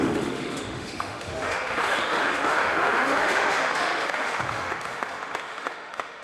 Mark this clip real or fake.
fake